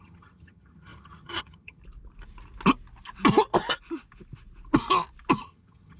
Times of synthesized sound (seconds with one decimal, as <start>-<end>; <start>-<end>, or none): 0.0-1.8; 5.4-6.0